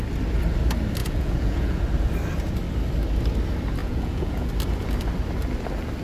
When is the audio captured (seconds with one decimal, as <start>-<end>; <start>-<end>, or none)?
0.0-1.0; 1.8-3.8; 4.5-6.0